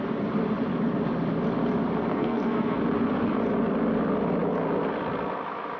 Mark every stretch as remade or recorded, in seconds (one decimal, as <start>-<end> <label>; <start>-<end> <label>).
0.0-2.1 recorded; 2.1-2.8 remade; 2.8-5.8 recorded